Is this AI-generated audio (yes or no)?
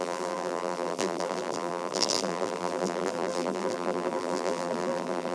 yes